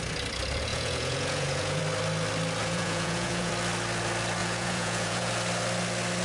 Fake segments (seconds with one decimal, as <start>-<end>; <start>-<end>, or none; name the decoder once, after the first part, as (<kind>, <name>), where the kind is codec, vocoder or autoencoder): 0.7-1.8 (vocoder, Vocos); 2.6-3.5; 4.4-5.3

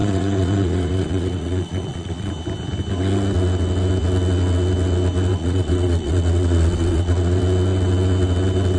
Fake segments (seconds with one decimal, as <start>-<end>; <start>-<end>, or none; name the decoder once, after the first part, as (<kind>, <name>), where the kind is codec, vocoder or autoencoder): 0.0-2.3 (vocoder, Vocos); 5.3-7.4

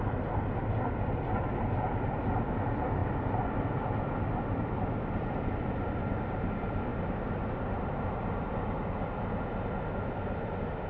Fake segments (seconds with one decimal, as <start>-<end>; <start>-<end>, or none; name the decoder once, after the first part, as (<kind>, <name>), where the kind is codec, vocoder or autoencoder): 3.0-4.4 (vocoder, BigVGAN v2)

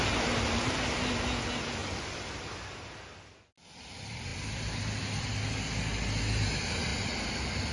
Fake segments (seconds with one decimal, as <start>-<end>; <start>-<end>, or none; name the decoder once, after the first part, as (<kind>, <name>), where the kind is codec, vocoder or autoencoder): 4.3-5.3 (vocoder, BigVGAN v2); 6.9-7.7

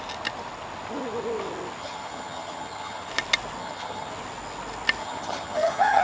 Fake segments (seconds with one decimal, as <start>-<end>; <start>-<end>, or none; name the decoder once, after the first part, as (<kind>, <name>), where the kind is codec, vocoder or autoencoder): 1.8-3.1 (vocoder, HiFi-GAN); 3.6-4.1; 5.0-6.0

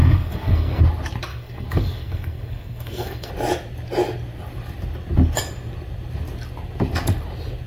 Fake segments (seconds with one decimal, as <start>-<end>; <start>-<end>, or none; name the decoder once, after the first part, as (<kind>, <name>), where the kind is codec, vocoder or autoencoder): 0.0-0.8 (codec, SNAC); 1.3-3.3